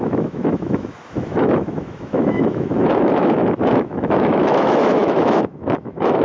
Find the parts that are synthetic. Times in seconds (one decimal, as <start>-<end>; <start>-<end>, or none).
0.0-6.2

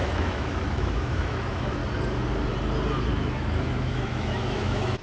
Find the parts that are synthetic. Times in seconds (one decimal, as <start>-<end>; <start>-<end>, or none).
0.0-1.8; 3.1-5.0

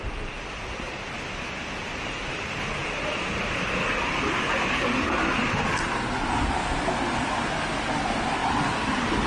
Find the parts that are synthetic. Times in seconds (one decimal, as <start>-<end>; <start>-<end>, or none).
none

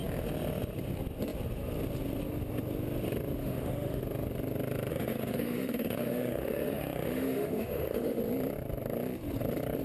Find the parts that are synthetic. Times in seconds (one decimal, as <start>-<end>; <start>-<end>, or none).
3.4-4.0; 4.9-8.2

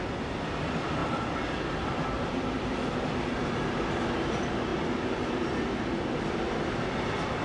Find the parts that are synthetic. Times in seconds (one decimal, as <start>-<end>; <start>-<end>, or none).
none

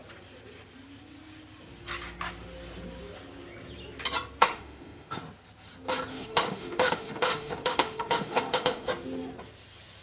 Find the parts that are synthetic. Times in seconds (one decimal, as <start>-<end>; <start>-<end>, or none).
4.4-5.2; 6.1-8.9

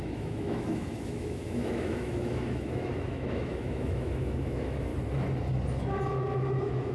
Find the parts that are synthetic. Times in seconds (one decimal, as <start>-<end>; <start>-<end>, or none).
0.0-4.9; 6.1-6.9

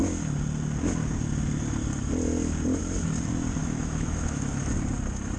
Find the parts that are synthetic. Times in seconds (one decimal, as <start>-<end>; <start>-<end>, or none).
3.6-4.6